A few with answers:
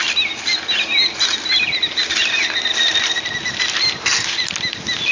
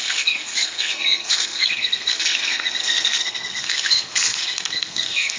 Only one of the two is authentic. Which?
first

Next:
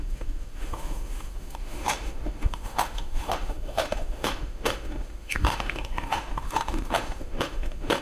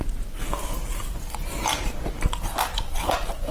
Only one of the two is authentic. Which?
second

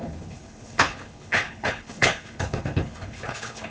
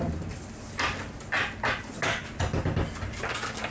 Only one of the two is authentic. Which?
second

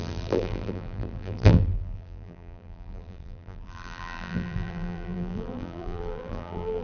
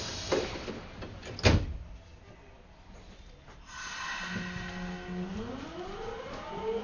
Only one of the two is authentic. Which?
second